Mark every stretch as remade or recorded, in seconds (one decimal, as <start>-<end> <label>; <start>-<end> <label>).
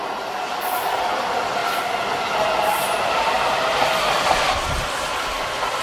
0.0-5.8 recorded